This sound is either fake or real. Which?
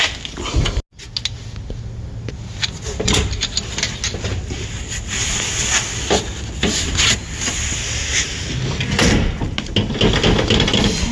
real